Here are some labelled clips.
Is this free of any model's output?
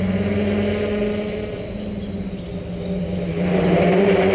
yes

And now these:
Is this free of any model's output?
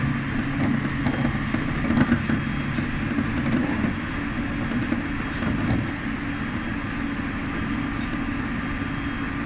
yes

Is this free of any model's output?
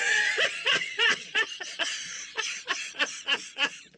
no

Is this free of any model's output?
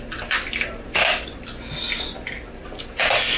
yes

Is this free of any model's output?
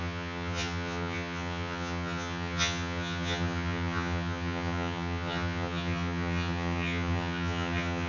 no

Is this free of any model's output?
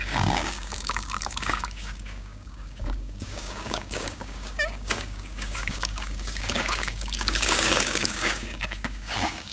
no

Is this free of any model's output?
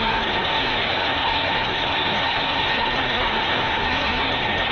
no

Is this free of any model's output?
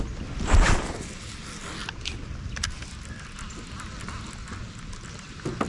yes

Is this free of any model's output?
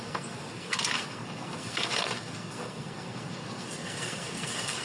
no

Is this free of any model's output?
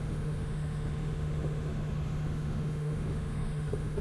no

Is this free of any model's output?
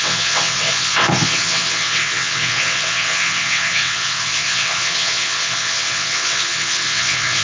no